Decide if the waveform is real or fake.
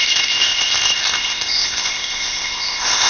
fake